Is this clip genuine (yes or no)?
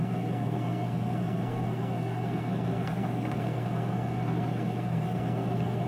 no